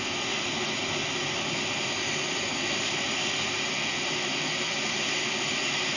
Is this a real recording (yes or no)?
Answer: yes